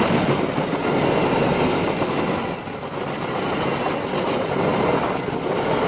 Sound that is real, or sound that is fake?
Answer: real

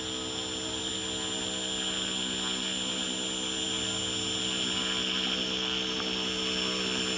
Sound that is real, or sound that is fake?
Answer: real